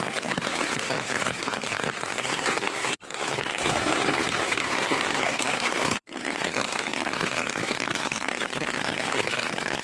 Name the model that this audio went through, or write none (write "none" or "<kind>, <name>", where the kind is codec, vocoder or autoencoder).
codec, SNAC